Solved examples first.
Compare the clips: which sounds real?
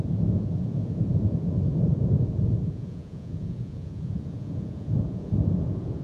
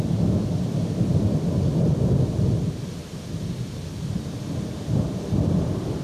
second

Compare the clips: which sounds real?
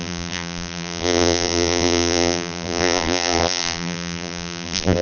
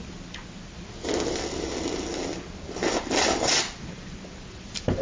second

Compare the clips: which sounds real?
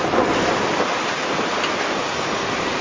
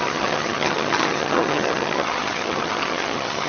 first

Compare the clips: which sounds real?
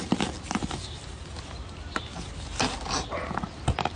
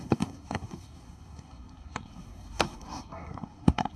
first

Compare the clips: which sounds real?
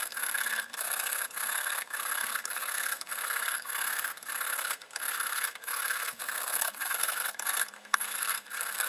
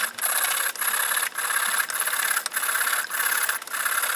second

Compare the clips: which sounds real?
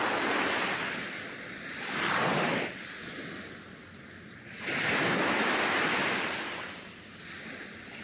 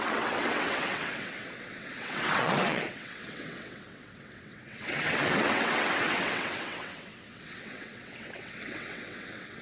first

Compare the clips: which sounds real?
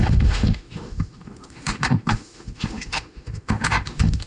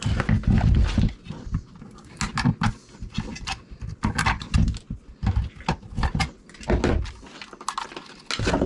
second